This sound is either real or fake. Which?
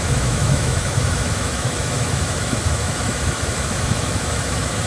fake